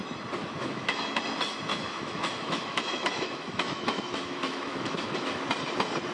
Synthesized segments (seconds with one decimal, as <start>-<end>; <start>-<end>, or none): 0.4-1.2; 1.7-5.4